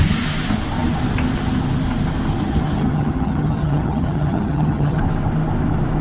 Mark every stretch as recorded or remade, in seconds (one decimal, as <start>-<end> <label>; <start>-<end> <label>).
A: 0.0-2.4 recorded; 2.4-5.0 remade; 5.0-6.0 recorded